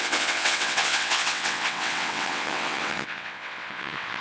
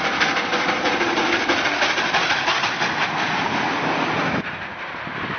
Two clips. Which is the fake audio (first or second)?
first